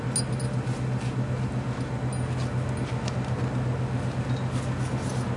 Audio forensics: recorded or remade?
recorded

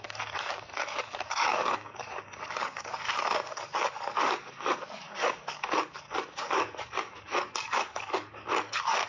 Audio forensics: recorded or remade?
remade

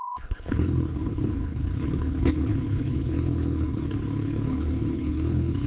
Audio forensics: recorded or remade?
remade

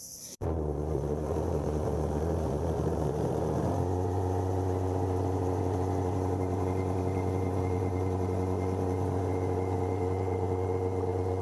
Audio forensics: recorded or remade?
remade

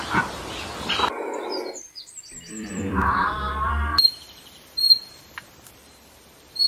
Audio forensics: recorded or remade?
remade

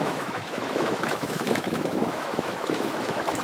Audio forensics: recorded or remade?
remade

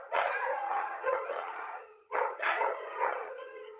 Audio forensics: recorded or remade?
remade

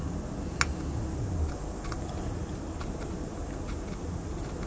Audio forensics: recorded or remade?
recorded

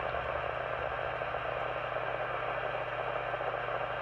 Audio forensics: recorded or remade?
recorded